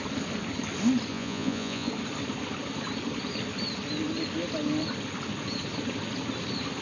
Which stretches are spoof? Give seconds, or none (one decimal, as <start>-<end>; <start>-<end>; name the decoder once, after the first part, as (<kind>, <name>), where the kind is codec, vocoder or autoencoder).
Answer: 1.1-1.9 (vocoder, Vocos)